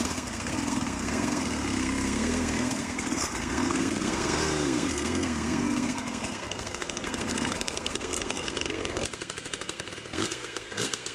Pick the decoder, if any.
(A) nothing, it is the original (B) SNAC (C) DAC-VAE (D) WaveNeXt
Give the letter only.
B